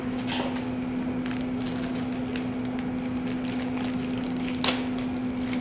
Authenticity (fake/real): real